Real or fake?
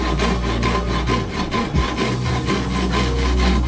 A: real